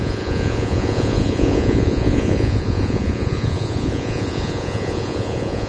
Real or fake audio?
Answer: fake